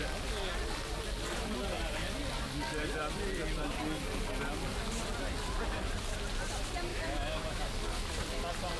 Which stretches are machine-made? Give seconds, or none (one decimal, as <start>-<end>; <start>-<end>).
6.9-7.6